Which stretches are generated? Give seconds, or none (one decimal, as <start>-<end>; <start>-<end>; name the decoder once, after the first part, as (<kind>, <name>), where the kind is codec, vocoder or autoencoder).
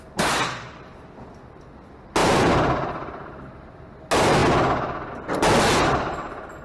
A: 2.2-3.5 (vocoder, BigVGAN v2)